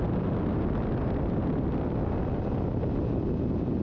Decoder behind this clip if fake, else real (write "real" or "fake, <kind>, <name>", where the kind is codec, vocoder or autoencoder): real